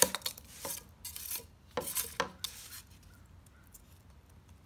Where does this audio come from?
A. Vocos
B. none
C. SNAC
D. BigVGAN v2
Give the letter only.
B